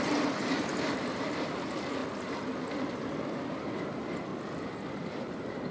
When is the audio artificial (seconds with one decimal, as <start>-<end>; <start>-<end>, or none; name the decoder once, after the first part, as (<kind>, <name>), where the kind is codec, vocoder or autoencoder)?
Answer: 0.0-2.0 (vocoder, BigVGAN v2); 3.5-4.3; 4.9-5.7